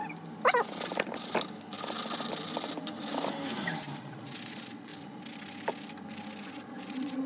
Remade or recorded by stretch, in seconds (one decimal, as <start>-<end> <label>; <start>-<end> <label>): 0.0-4.0 recorded; 4.0-4.9 remade; 4.9-6.5 recorded; 6.5-7.3 remade